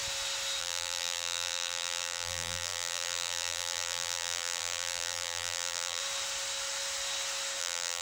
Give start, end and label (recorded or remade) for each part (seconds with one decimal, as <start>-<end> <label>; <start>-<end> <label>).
0.0-0.6 recorded; 0.6-6.0 remade; 6.0-7.6 recorded; 7.6-8.0 remade